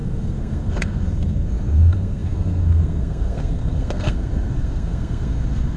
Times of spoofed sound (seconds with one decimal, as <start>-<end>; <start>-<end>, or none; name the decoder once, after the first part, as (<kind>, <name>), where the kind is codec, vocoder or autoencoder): 0.0-5.8 (codec, SNAC)